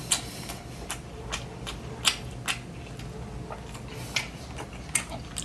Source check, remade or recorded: recorded